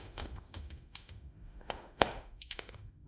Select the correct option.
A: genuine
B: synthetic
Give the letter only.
B